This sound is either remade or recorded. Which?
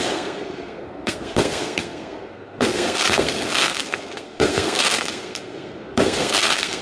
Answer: remade